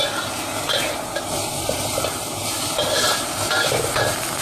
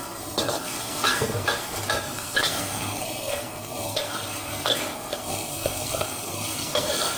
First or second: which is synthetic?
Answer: second